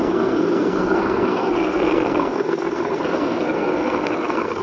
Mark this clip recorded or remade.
remade